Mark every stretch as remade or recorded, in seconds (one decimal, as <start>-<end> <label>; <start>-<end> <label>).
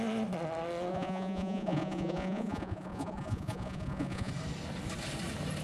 0.0-0.9 recorded; 0.9-4.3 remade; 4.3-5.6 recorded